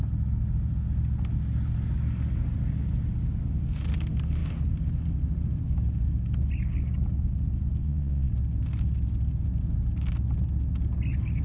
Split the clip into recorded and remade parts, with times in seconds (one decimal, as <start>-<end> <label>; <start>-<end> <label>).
0.0-7.8 recorded; 7.8-8.3 remade; 8.3-11.4 recorded